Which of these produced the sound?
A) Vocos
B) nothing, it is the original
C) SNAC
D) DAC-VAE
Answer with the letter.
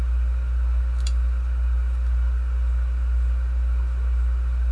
B